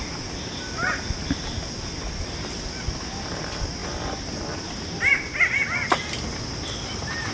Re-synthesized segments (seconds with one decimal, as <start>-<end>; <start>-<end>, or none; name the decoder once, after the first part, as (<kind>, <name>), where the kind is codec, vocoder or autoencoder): none